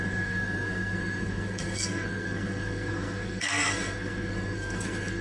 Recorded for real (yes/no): no